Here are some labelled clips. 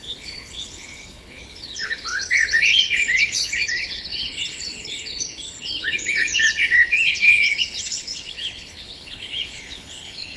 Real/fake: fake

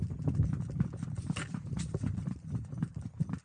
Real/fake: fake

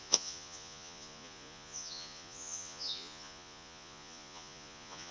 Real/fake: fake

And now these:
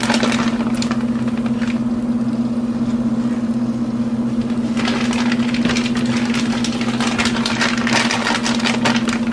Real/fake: real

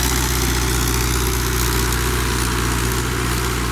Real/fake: real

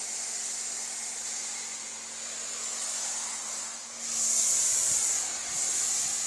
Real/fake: real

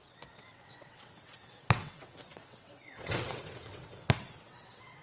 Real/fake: fake